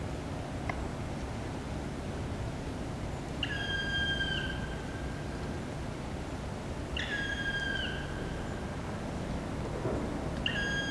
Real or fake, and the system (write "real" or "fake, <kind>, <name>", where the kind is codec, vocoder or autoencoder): real